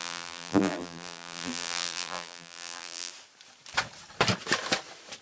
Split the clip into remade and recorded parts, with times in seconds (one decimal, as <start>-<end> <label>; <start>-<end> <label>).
0.0-3.1 remade; 3.1-5.2 recorded